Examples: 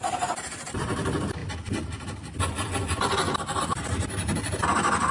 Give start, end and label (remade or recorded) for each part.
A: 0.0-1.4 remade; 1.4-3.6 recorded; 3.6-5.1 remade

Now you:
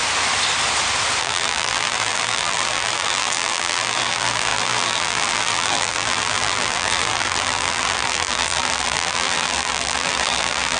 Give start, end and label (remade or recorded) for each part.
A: 0.0-1.2 recorded; 1.2-10.8 remade

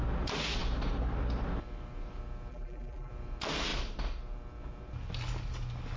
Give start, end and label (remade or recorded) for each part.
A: 0.0-2.5 recorded; 2.5-3.1 remade; 3.1-6.0 recorded